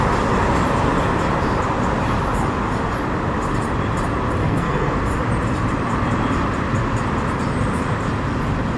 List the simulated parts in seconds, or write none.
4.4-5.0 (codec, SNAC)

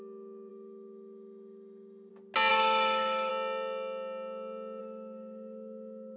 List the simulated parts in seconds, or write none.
0.5-2.1 (autoencoder, DAC-VAE); 2.5-3.3; 4.8-6.2

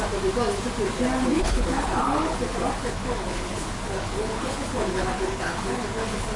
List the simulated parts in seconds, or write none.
1.3-2.4 (codec, HILCodec); 2.8-6.4